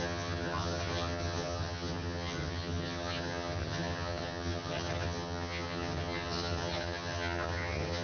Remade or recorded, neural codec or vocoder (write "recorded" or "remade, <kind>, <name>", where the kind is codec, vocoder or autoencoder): remade, vocoder, HiFi-GAN